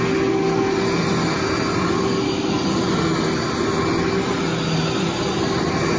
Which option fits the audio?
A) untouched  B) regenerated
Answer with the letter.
A